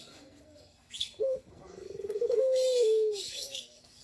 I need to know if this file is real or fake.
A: fake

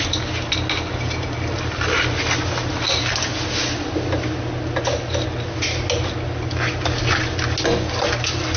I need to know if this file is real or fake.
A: real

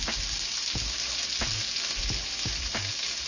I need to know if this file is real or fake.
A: real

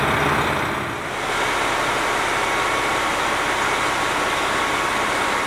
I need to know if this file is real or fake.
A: real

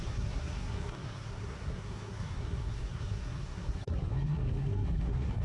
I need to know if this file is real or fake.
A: fake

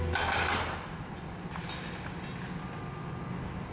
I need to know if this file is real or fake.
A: real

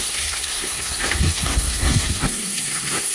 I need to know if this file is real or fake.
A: fake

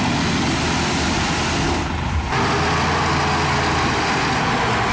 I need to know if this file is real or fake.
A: real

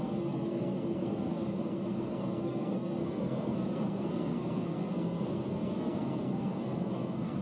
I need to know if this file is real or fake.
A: fake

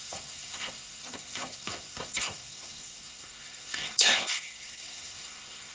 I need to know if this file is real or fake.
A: fake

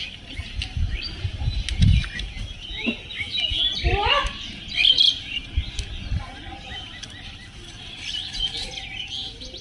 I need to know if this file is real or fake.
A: real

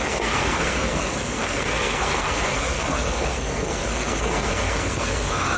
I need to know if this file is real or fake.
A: fake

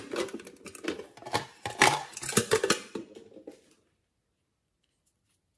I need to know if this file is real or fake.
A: real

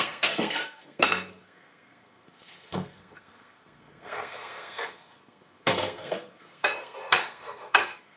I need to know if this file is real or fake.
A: fake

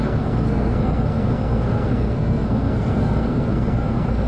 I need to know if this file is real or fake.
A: fake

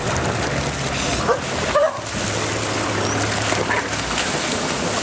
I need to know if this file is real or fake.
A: real